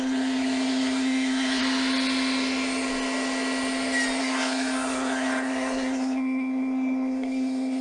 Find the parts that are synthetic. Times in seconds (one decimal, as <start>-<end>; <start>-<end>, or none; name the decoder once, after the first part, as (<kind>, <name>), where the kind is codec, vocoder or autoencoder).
0.0-1.6 (codec, SNAC); 4.2-7.8